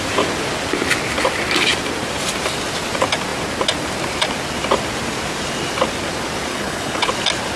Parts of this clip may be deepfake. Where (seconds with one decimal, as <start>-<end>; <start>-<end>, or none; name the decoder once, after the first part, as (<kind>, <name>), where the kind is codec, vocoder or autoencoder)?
6.5-7.1 (codec, HILCodec)